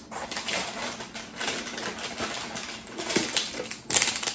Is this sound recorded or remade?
recorded